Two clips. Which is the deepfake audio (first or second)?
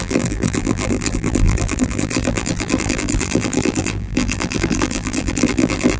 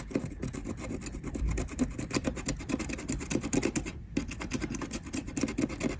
first